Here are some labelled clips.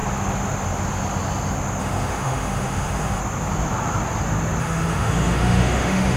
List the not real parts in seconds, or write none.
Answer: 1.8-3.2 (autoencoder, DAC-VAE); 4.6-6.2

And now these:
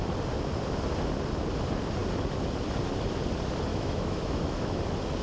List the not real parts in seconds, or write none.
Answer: 3.7-4.8 (autoencoder, DAC-VAE)

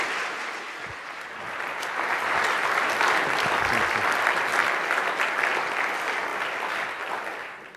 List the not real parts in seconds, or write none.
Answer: none

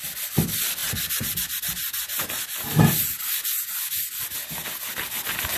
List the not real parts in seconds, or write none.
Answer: none

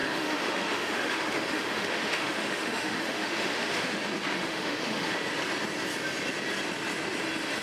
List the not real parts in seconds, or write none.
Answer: 0.0-4.0 (autoencoder, DAC-VAE); 4.4-5.1